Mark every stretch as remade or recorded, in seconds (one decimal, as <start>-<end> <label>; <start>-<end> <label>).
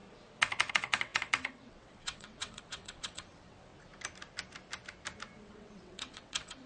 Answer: 0.0-0.7 recorded; 0.7-3.7 remade; 3.7-5.4 recorded; 5.4-6.7 remade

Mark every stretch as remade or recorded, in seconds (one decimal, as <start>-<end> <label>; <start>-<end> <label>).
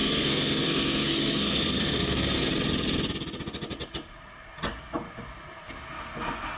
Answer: 0.0-2.5 remade; 2.5-6.6 recorded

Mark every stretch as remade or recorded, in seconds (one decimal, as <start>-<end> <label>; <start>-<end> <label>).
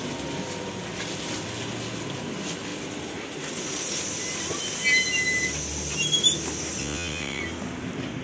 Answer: 0.0-6.8 recorded; 6.8-7.4 remade; 7.4-8.2 recorded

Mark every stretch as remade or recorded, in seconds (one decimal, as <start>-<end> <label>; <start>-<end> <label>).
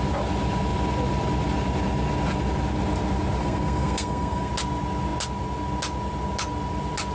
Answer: 0.0-3.4 recorded; 3.4-4.5 remade; 4.5-7.1 recorded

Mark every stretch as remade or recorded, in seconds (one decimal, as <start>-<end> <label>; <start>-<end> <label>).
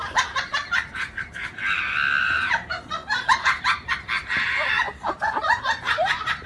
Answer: 0.0-1.6 remade; 1.6-2.2 recorded; 2.2-6.5 remade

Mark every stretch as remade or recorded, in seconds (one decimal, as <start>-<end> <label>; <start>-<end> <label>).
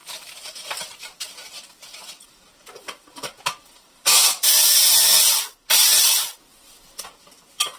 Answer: 0.0-3.1 remade; 3.1-3.6 recorded; 3.6-5.4 remade; 5.4-7.8 recorded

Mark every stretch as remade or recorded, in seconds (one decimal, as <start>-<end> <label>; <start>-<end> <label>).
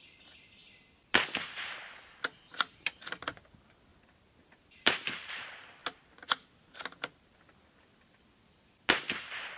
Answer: 0.0-3.9 recorded; 3.9-5.3 remade; 5.3-9.6 recorded